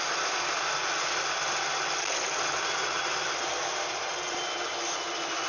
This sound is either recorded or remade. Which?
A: recorded